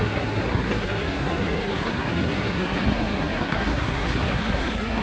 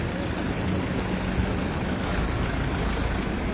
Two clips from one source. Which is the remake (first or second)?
first